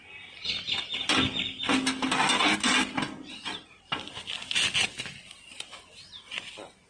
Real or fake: real